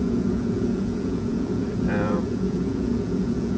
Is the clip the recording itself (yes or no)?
no